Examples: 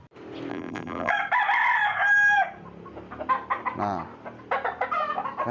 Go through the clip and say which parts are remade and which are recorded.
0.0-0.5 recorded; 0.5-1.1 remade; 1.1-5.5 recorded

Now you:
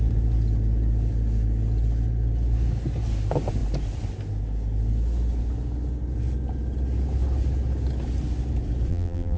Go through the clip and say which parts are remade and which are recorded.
0.0-8.9 recorded; 8.9-9.4 remade

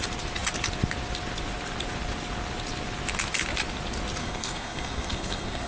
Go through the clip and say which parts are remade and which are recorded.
0.0-4.2 recorded; 4.2-5.7 remade

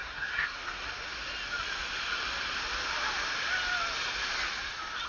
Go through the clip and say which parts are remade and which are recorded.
0.0-0.9 remade; 0.9-5.1 recorded

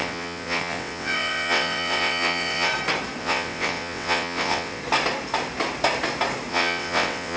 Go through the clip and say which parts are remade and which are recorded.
0.0-2.7 remade; 2.7-3.2 recorded; 3.2-4.8 remade; 4.8-6.5 recorded; 6.5-7.4 remade

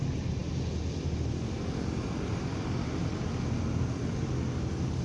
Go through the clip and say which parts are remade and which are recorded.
0.0-5.0 recorded